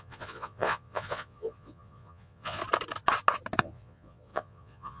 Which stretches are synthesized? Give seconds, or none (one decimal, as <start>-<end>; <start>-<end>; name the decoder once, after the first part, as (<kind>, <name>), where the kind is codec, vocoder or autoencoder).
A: 0.0-2.6 (vocoder, Vocos); 3.6-5.0